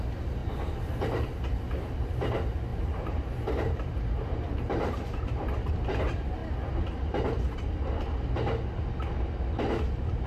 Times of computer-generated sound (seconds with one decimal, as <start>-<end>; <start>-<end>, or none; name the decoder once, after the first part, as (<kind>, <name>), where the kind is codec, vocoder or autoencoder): 2.7-5.2 (vocoder, BigVGAN v2)